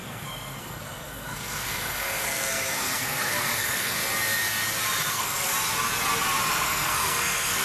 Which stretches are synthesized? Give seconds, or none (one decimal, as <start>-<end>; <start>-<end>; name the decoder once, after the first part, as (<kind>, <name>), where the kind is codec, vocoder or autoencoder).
0.0-4.0 (codec, SNAC); 5.1-5.5; 6.5-7.6